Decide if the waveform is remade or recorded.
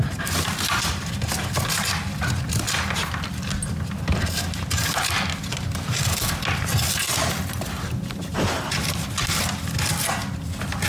recorded